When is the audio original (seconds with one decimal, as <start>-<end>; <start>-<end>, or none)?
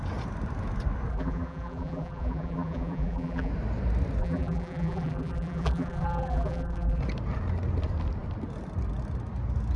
0.0-1.1; 3.5-4.2; 7.0-9.8